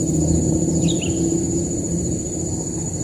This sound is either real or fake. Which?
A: real